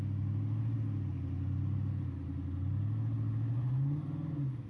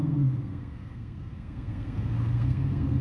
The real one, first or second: first